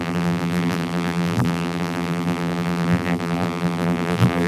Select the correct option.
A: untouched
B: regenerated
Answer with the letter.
B